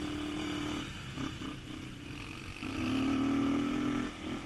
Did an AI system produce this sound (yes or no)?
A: no